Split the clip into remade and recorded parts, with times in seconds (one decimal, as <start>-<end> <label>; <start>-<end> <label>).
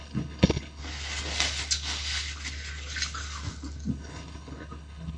0.0-0.8 remade; 0.8-3.9 recorded; 3.9-5.2 remade